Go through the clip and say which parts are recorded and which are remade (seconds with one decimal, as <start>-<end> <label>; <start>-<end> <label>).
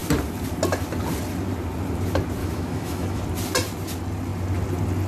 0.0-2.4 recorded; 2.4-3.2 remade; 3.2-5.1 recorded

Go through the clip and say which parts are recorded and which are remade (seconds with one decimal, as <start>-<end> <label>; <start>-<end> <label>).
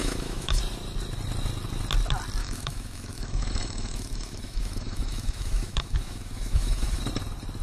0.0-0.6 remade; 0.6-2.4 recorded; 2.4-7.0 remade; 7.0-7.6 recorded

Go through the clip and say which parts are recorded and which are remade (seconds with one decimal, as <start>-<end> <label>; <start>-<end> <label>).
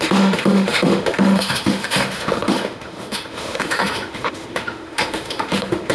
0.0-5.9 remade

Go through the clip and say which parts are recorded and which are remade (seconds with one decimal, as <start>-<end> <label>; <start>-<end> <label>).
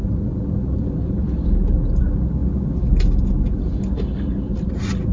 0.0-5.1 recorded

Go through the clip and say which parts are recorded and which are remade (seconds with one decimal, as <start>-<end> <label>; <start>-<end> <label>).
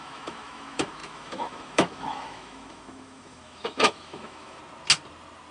0.0-4.6 remade; 4.6-5.5 recorded